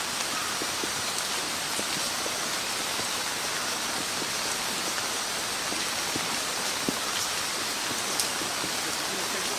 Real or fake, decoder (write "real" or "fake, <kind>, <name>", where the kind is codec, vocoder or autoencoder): real